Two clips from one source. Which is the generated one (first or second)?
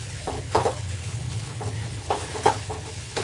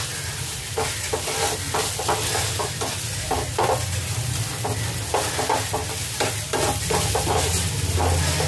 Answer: first